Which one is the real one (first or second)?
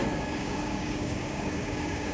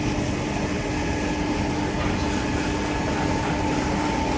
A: second